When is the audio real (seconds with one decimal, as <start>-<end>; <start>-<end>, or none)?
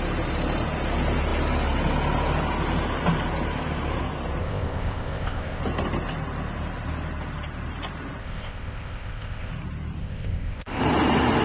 0.0-4.4; 5.6-8.2; 9.5-10.0; 10.8-11.4